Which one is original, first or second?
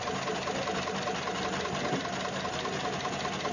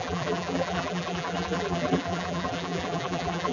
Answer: first